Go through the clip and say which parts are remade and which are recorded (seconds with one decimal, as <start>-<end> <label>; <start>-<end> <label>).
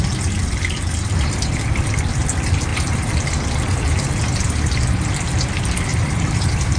0.0-0.4 recorded; 0.4-1.6 remade; 1.6-2.7 recorded; 2.7-5.5 remade; 5.5-5.9 recorded; 5.9-6.8 remade